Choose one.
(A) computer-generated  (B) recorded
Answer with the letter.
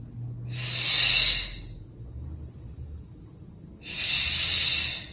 B